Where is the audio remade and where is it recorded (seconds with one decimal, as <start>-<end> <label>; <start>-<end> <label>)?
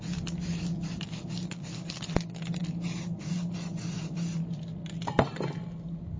0.0-6.2 recorded